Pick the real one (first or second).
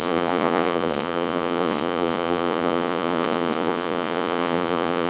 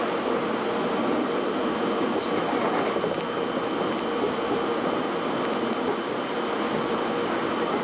second